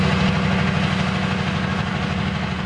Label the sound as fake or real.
real